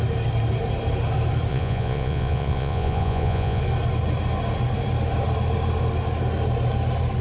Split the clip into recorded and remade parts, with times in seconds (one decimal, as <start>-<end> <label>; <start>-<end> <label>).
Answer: 0.0-1.5 recorded; 1.5-3.6 remade; 3.6-7.2 recorded